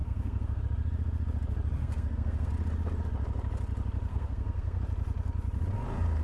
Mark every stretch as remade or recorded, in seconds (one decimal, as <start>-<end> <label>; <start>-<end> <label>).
0.0-0.6 remade; 0.6-1.8 recorded; 1.8-2.5 remade; 2.5-4.1 recorded; 4.1-4.8 remade; 4.8-6.2 recorded